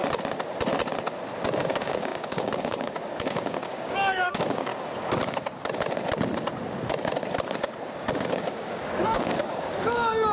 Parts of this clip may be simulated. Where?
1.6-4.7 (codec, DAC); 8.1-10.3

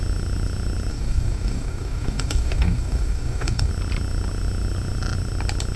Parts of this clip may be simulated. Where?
0.9-3.7 (codec, DAC)

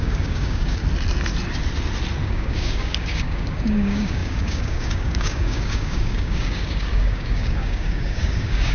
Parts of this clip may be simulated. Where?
0.0-0.8 (codec, DAC); 2.2-8.7

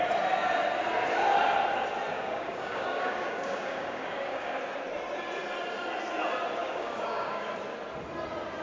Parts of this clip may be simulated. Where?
2.1-4.6 (codec, DAC); 6.6-7.5

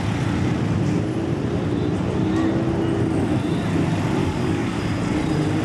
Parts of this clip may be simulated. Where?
4.2-4.8 (codec, DAC)

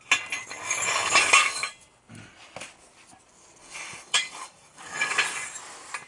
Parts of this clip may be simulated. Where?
0.4-1.7 (codec, DAC); 3.6-5.1

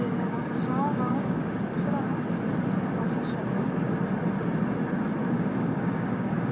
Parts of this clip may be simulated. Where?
0.0-1.4 (codec, DAC); 5.3-6.5

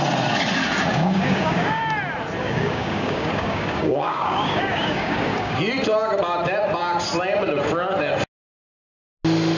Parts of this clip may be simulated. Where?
0.9-1.8 (codec, DAC); 2.4-5.6